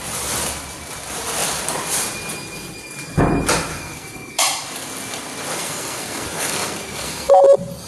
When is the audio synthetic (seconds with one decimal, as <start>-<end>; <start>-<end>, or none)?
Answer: 3.7-4.4; 5.5-7.3